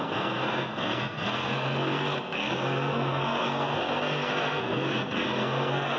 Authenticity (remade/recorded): remade